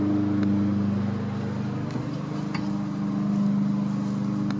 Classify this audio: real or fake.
real